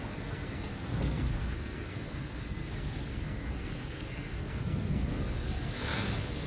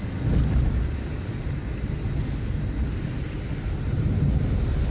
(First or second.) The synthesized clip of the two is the first